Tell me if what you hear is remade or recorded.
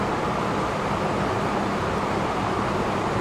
recorded